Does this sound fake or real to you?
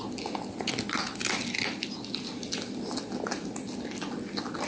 real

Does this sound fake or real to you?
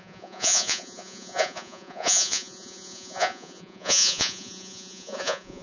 fake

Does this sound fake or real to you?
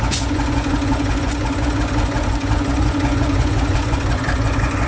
fake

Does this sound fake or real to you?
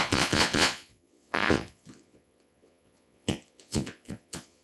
fake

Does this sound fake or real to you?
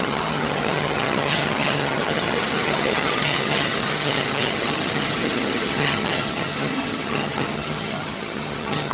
fake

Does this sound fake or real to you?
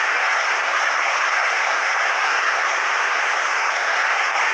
fake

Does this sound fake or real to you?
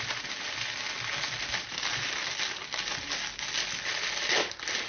real